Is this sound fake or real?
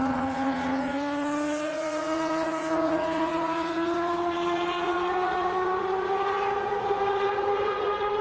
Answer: fake